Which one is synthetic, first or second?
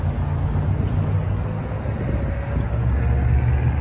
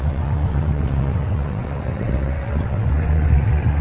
second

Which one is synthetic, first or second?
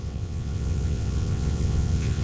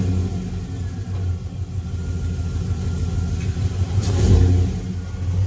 first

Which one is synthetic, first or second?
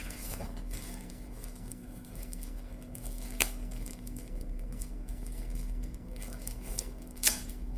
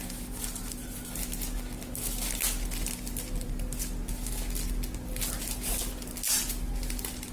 first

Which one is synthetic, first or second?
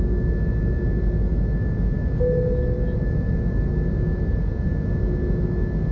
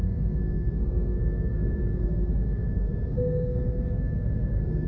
second